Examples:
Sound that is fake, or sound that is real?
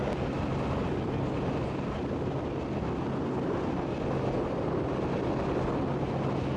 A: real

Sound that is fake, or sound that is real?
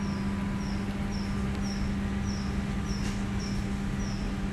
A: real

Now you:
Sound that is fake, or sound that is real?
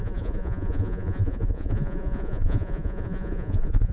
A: fake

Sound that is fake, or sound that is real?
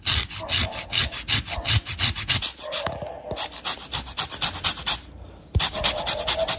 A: real